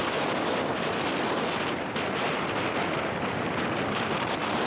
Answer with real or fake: fake